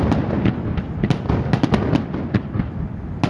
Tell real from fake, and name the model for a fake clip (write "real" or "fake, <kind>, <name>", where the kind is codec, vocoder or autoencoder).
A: real